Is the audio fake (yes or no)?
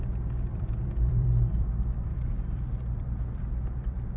yes